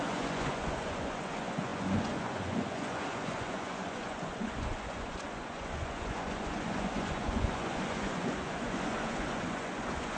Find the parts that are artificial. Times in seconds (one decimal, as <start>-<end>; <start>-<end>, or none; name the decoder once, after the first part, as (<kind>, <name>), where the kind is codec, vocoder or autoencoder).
0.0-10.2 (vocoder, Vocos)